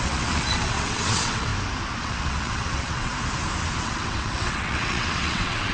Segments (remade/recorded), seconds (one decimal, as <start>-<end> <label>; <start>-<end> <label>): 0.0-1.5 remade; 1.5-2.0 recorded; 2.0-3.1 remade; 3.1-3.8 recorded; 3.8-5.7 remade